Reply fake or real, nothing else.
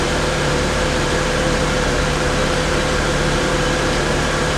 fake